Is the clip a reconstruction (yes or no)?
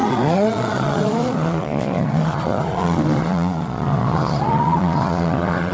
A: yes